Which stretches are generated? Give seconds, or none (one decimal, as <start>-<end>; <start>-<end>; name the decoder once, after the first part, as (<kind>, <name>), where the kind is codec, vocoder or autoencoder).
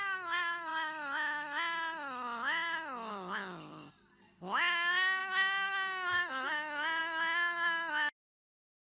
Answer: none